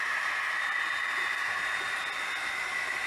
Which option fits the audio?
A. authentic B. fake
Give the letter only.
A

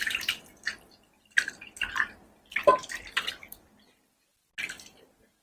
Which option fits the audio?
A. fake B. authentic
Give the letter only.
B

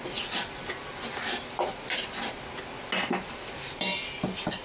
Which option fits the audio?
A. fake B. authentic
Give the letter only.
B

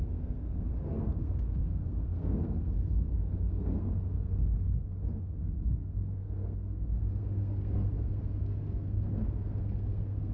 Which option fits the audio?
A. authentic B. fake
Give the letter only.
B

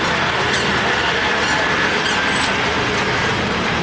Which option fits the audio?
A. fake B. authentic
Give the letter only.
B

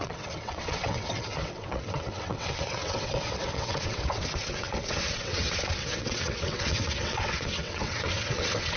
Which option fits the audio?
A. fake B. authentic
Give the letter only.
A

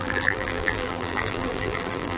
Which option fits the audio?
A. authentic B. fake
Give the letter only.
B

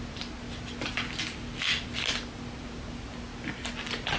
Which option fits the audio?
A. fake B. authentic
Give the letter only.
B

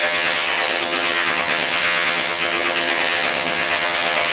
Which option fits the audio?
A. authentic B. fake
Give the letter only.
B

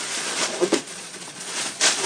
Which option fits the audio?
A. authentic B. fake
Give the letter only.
B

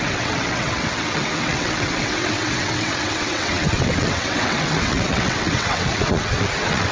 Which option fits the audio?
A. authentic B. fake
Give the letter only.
B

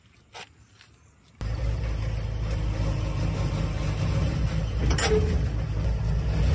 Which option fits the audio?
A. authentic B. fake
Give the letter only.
A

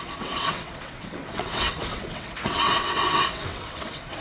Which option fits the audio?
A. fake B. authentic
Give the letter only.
A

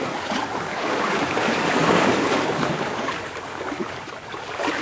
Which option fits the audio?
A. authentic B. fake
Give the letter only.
B